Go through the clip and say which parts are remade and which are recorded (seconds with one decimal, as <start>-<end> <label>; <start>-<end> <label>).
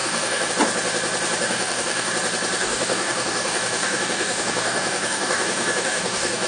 0.0-0.5 remade; 0.5-1.4 recorded; 1.4-2.1 remade; 2.1-2.6 recorded; 2.6-6.5 remade